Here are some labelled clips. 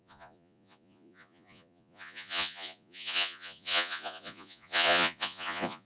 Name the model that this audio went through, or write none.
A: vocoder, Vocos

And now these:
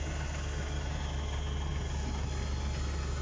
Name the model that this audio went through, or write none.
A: none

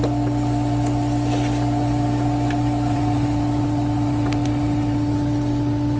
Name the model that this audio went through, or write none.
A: none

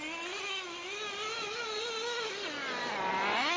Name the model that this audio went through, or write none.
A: none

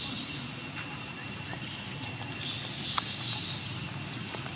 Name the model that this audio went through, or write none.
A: none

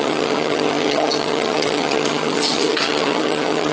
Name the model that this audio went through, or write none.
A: vocoder, HiFi-GAN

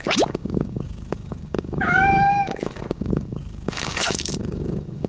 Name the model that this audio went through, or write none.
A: codec, DAC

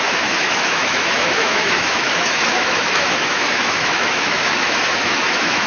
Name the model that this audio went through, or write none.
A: autoencoder, DAC-VAE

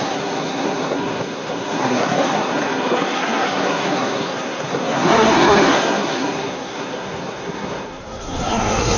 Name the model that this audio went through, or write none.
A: codec, SNAC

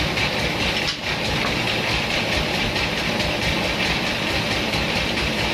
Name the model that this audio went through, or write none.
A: none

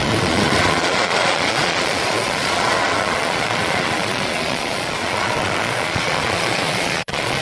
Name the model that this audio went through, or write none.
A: vocoder, Vocos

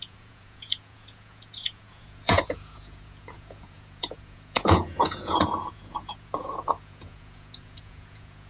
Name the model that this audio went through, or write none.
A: vocoder, Vocos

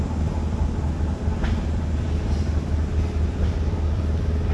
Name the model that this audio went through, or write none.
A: none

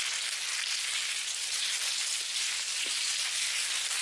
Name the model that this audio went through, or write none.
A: none